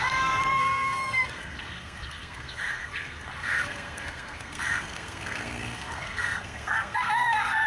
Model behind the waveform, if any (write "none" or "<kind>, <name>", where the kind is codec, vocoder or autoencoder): codec, SNAC